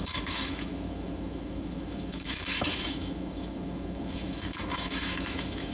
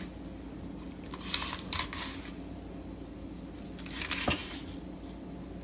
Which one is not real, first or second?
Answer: first